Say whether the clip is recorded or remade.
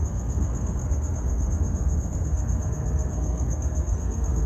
remade